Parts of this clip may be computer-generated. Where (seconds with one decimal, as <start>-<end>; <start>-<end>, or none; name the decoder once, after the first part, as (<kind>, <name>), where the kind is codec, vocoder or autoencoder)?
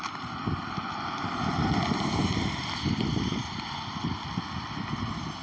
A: none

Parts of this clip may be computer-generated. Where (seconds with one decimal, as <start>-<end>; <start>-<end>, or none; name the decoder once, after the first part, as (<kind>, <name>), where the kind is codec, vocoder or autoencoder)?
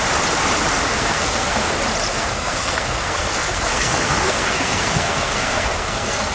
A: 0.9-1.7 (codec, SNAC); 2.1-6.3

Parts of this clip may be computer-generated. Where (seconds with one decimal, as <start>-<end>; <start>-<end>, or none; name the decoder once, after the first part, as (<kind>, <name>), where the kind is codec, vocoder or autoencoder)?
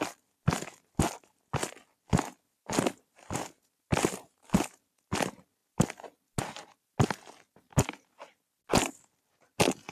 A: none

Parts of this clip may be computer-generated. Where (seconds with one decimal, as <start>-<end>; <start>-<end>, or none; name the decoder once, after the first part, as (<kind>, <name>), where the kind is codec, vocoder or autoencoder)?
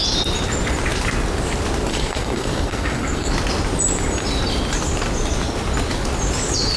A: 1.9-3.3 (codec, SNAC)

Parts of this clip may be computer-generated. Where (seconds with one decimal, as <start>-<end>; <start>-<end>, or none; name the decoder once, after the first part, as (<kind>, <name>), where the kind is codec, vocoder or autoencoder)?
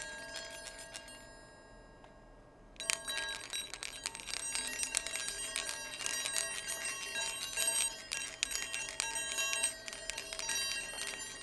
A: none